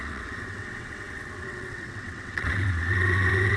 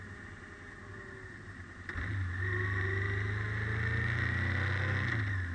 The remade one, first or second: first